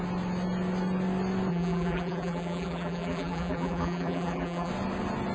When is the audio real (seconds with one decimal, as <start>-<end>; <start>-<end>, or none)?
0.0-1.5; 4.7-5.3